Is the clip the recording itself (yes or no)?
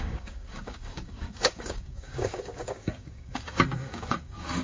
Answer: no